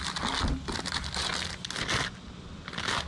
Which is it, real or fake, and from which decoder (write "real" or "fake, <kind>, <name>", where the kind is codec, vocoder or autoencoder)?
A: real